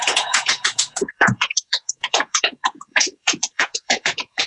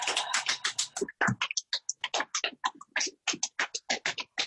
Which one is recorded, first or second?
second